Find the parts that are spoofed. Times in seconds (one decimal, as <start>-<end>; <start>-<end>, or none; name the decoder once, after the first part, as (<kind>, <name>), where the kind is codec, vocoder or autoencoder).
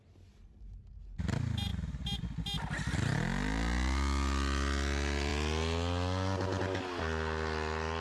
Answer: none